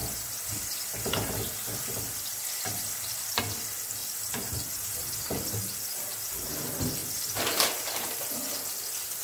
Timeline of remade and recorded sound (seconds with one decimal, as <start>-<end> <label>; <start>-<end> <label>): 0.0-3.4 remade; 3.4-4.0 recorded; 4.0-5.0 remade; 5.0-7.0 recorded; 7.0-8.3 remade; 8.3-9.2 recorded